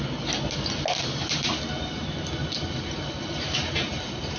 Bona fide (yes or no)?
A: yes